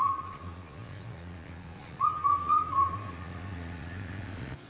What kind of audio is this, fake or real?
fake